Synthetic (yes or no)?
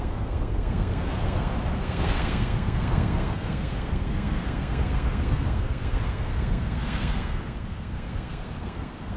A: yes